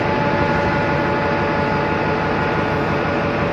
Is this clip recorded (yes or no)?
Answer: yes